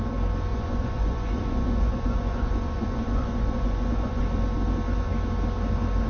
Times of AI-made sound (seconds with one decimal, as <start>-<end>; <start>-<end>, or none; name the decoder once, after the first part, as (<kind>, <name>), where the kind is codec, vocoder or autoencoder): 0.5-4.2 (vocoder, Vocos)